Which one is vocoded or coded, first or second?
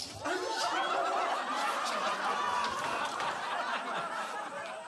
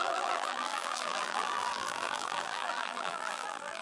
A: second